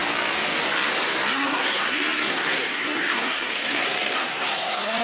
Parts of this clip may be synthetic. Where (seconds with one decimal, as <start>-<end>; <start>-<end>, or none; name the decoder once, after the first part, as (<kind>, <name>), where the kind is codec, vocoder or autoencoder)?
1.3-5.0 (codec, SNAC)